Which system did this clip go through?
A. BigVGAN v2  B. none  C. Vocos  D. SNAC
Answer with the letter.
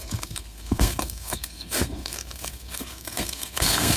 D